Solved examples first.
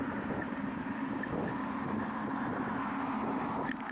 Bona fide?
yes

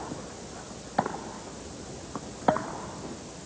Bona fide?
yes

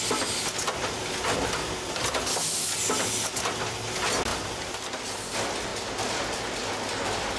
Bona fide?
yes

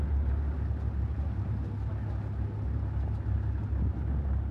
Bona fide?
yes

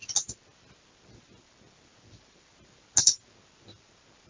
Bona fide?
yes